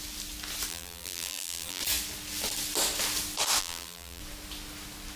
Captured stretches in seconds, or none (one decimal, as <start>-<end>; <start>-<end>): 0.0-0.7; 1.8-3.6; 4.2-5.2